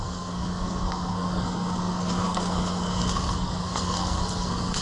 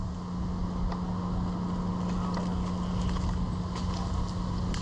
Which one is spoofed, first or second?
first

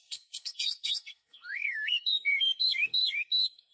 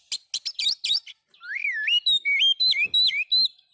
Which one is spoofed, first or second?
first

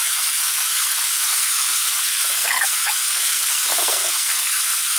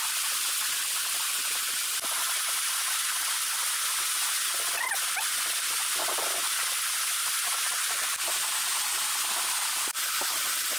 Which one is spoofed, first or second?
first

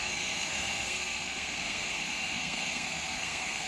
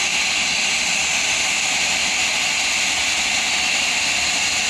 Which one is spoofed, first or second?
first